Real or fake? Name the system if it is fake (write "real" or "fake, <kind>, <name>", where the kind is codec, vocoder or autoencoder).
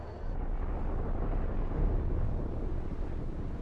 real